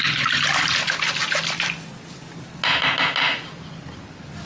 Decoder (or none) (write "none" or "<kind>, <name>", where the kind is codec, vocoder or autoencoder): none